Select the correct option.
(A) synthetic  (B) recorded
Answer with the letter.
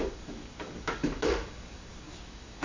A